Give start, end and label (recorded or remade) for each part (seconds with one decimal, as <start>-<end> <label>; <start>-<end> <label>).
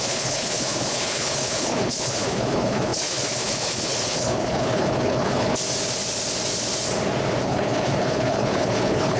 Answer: 0.0-5.5 remade; 5.5-7.4 recorded; 7.4-9.2 remade